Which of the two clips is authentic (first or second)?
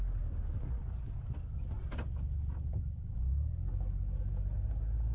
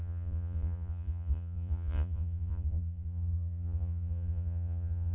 first